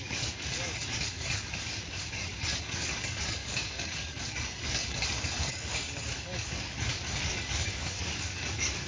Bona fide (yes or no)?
no